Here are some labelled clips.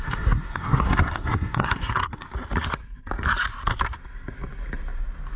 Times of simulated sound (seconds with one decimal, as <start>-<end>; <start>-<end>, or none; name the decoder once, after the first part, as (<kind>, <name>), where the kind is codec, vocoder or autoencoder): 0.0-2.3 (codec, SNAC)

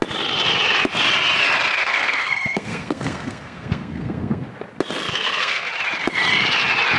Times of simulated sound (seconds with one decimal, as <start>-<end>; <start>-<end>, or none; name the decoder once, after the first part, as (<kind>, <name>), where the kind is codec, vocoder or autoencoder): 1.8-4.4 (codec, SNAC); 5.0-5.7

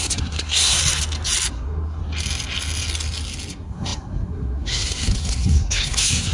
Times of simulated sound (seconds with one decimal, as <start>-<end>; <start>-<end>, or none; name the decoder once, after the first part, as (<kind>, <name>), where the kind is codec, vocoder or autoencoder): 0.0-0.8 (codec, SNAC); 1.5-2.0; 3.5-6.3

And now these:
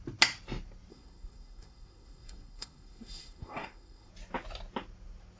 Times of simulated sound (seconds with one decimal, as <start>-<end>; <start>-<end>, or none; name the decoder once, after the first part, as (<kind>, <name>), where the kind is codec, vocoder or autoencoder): 0.9-4.1 (codec, SNAC)